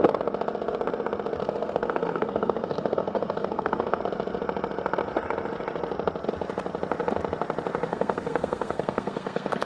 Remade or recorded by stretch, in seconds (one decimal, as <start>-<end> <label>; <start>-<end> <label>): 0.0-1.4 recorded; 1.4-4.0 remade; 4.0-7.9 recorded; 7.9-9.7 remade